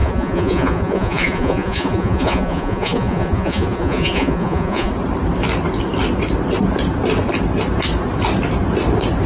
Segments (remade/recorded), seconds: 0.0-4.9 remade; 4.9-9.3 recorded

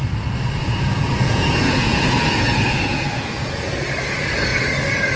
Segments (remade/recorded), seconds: 0.0-0.6 recorded; 0.6-3.7 remade; 3.7-5.2 recorded

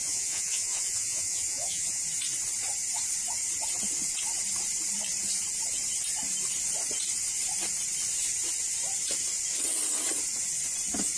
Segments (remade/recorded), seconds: 0.0-2.0 remade; 2.0-11.2 recorded

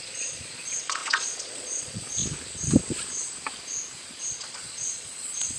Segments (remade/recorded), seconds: 0.0-2.2 remade; 2.2-4.2 recorded; 4.2-5.6 remade

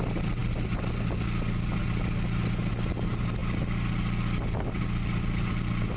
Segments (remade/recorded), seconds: 0.0-6.0 recorded